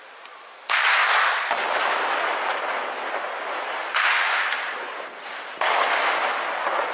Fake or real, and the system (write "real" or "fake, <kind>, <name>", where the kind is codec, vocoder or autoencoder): real